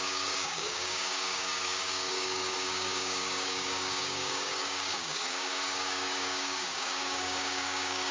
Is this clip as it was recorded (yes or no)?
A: no